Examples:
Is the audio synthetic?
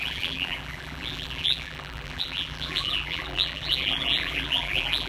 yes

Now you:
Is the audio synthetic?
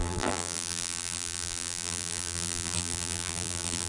yes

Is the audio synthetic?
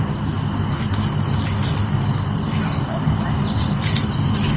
no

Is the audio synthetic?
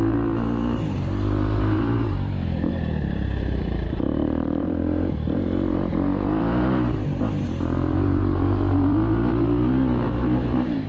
yes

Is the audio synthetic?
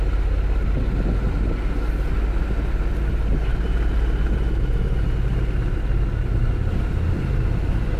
no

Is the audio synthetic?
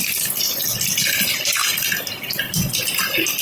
no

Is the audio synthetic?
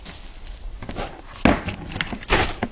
no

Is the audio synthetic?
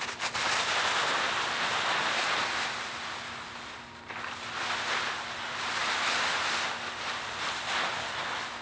no